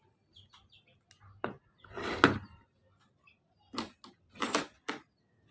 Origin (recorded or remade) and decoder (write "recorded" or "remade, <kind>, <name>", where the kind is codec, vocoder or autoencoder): recorded